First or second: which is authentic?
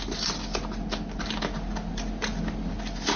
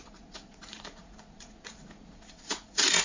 first